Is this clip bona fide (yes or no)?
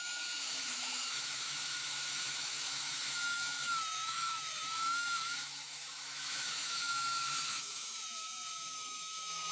no